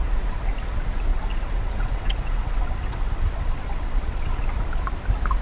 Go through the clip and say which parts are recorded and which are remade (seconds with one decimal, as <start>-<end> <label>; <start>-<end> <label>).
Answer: 0.0-1.1 recorded; 1.1-4.3 remade; 4.3-5.4 recorded